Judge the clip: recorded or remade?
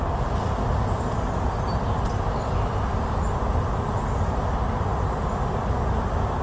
recorded